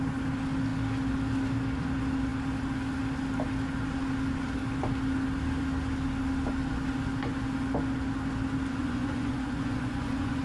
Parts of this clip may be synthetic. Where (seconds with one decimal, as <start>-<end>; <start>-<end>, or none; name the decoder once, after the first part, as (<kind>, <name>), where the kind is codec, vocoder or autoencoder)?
8.8-10.4 (vocoder, Vocos)